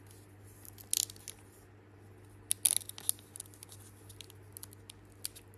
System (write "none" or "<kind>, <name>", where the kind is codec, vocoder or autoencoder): none